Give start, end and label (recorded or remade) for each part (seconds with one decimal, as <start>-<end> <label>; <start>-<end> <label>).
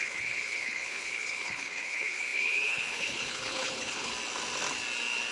0.0-4.1 remade; 4.1-5.3 recorded